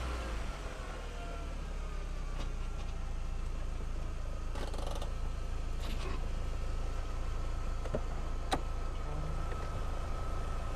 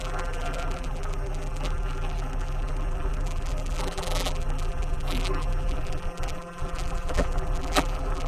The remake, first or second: second